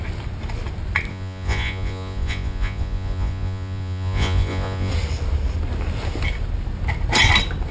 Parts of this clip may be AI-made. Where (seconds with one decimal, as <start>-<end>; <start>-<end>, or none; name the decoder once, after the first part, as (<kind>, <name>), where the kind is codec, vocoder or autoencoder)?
1.1-4.9 (vocoder, Vocos)